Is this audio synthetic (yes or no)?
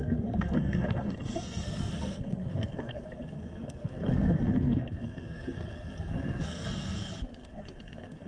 yes